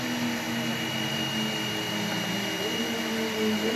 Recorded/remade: recorded